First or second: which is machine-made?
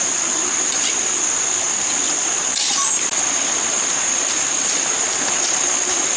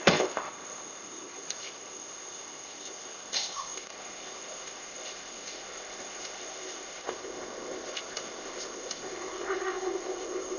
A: second